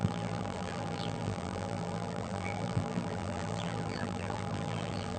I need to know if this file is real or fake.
fake